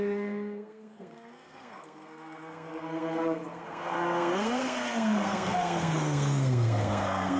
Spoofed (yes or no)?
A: yes